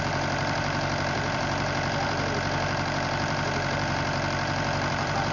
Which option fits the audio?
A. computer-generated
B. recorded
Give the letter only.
A